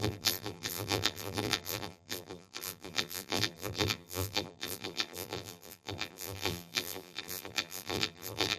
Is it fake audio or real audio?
fake